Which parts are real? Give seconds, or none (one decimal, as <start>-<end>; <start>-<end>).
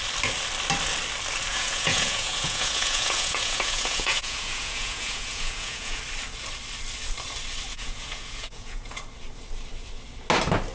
0.0-1.5; 6.0-7.7; 9.0-10.7